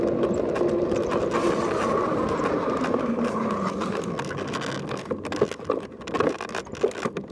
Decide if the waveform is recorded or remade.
recorded